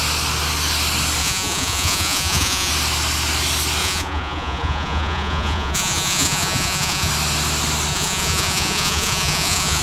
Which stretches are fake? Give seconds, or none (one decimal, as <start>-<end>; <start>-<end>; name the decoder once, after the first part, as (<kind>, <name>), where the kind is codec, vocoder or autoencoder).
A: 1.2-2.7 (vocoder, Vocos); 3.8-7.1; 7.9-9.8

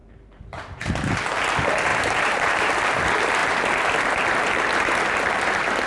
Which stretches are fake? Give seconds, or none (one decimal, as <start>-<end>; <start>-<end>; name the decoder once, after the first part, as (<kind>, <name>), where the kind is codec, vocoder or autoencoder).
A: 0.0-0.9 (vocoder, BigVGAN v2); 1.9-2.7

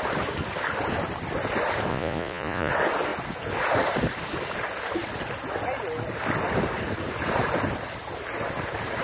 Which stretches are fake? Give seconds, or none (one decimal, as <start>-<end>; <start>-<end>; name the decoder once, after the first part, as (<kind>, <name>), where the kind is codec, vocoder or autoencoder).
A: 1.9-2.7 (vocoder, Vocos)

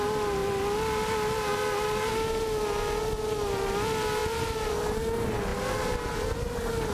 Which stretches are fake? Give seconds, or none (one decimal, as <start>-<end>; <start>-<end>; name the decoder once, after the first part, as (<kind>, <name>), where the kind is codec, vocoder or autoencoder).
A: none

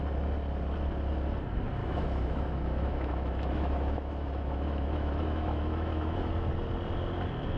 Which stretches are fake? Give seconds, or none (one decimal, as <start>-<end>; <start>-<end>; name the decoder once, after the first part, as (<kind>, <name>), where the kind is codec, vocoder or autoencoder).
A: 1.8-6.3 (autoencoder, DAC-VAE)

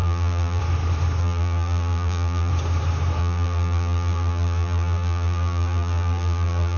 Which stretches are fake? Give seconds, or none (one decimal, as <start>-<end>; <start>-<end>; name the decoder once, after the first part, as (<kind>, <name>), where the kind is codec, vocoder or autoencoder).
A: 0.0-0.6 (vocoder, BigVGAN v2); 1.2-2.5; 3.2-6.8

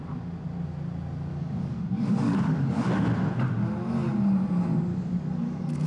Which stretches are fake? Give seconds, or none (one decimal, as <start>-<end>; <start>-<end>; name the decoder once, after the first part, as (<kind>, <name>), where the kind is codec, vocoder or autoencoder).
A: 1.3-2.9 (codec, DAC); 4.9-5.9